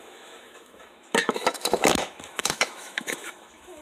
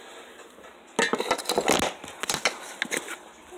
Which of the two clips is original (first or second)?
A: second